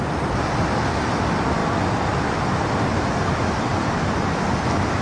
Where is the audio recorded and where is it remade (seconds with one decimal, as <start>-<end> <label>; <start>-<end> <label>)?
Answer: 0.0-3.7 recorded; 3.7-4.6 remade; 4.6-5.0 recorded